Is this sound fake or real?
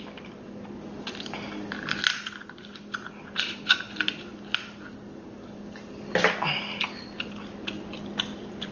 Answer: real